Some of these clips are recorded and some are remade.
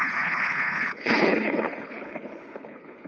remade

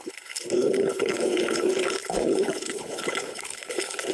remade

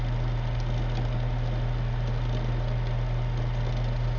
recorded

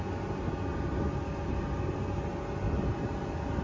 recorded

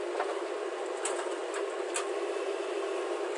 recorded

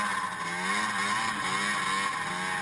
recorded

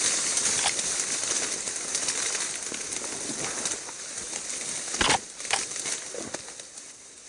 recorded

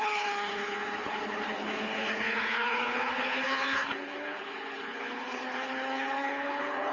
remade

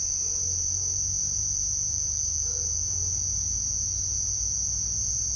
recorded